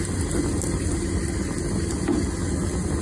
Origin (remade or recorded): recorded